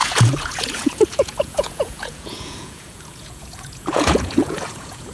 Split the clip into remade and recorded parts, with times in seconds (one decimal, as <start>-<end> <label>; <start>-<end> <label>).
0.0-5.1 remade